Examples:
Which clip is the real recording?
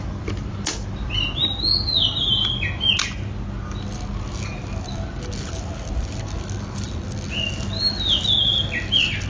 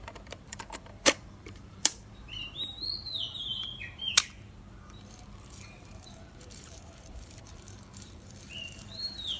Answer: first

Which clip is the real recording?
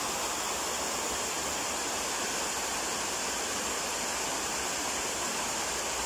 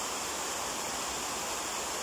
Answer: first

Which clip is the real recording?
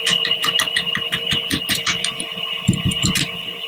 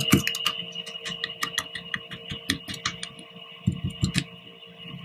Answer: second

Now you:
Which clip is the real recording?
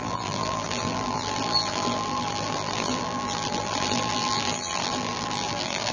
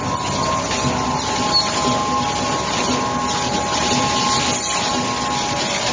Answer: second